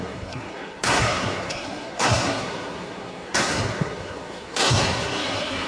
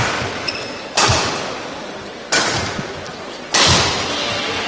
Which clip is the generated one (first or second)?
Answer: first